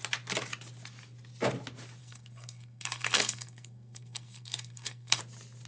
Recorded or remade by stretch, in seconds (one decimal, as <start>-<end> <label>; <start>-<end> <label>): 0.0-2.0 recorded; 2.0-5.2 remade; 5.2-5.7 recorded

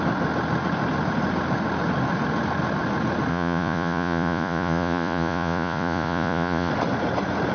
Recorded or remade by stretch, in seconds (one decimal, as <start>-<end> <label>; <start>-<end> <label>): 0.0-3.3 recorded; 3.3-6.7 remade; 6.7-7.5 recorded

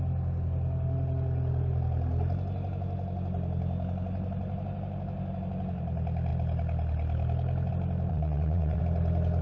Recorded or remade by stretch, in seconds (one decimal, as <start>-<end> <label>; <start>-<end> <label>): 0.0-8.1 recorded; 8.1-8.8 remade; 8.8-9.4 recorded

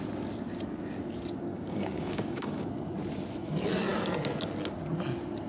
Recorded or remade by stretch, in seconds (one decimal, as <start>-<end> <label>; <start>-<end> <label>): 0.0-1.5 recorded; 1.5-2.7 remade; 2.7-5.5 recorded